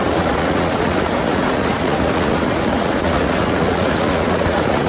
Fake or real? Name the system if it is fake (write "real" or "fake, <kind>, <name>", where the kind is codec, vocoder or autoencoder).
fake, vocoder, Vocos